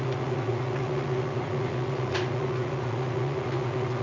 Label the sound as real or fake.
fake